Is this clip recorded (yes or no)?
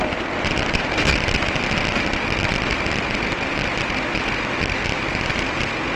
yes